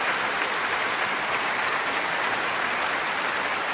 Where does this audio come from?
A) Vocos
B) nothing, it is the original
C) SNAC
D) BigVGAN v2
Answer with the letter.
B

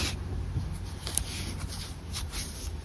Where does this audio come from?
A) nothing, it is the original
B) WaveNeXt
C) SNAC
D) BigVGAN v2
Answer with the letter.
A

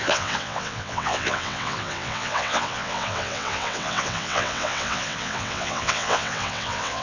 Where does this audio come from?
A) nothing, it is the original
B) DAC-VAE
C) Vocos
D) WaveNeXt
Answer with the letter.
D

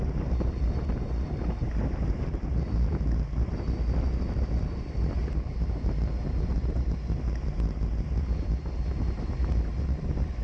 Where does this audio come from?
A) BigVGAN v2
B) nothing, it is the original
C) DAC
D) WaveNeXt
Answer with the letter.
A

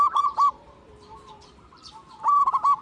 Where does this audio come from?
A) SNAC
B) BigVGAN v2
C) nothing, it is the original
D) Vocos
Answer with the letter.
B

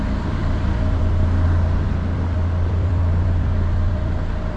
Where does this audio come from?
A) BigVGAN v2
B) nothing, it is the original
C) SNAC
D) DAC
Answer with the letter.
A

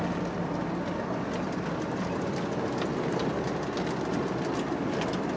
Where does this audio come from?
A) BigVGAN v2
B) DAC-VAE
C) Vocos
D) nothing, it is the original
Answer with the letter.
D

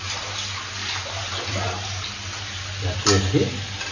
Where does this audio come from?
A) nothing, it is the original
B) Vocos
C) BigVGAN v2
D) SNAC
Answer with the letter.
A